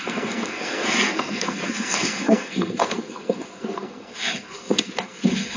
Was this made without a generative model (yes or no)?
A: no